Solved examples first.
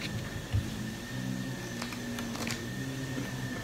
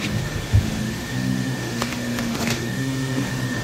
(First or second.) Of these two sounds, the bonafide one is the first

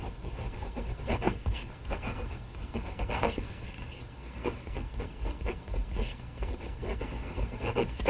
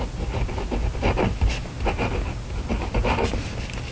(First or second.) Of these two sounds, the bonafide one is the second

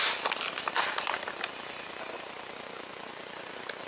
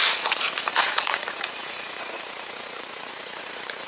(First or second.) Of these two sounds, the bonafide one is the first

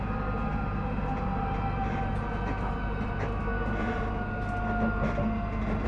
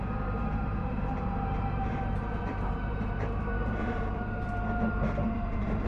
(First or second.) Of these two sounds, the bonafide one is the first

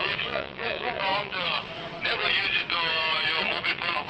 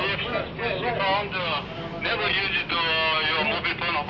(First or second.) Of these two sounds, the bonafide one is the second